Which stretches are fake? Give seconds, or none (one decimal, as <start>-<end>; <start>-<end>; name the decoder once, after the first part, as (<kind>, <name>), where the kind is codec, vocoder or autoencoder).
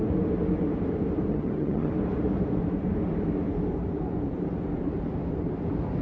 1.3-1.9 (vocoder, HiFi-GAN)